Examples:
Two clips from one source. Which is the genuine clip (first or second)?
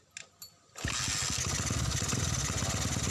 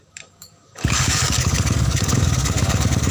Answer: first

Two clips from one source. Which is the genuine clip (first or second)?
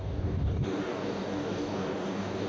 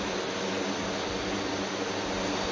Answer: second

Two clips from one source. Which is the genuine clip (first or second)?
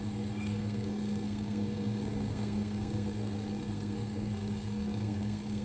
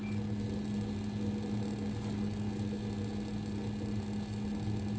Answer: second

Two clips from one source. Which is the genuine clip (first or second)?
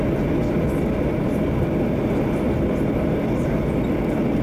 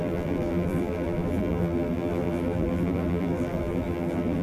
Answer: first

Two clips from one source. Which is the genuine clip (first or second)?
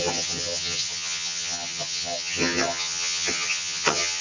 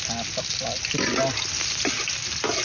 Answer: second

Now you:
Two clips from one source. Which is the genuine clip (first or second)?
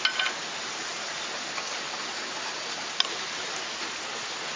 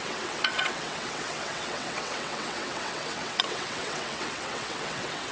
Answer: first